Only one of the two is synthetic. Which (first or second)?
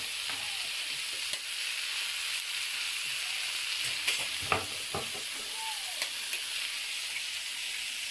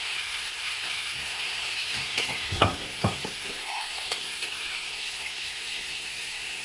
second